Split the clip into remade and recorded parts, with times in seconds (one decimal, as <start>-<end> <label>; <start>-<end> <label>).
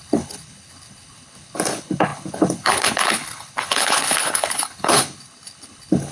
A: 0.0-6.1 remade